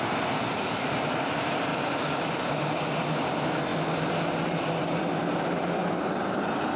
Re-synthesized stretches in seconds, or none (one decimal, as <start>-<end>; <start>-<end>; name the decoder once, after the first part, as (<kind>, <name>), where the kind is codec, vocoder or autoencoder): 1.7-2.5 (vocoder, BigVGAN v2)